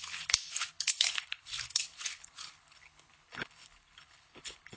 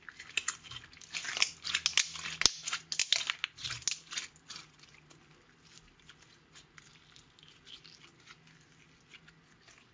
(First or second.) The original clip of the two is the second